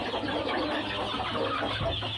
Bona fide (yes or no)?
yes